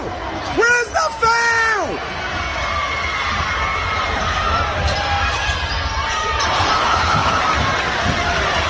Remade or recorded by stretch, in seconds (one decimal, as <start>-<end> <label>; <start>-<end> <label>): 0.0-6.8 recorded; 6.8-7.4 remade; 7.4-8.7 recorded